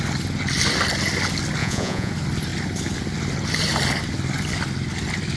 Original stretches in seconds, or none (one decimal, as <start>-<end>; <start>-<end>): 0.0-1.6; 2.1-5.4